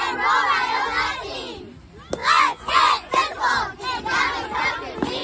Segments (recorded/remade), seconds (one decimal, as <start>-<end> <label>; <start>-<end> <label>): 0.0-2.2 recorded; 2.2-3.1 remade; 3.1-5.2 recorded